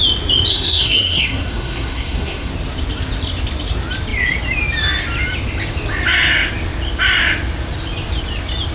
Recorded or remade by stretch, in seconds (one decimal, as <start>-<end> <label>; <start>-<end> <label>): 0.0-0.5 recorded; 0.5-2.5 remade; 2.5-8.7 recorded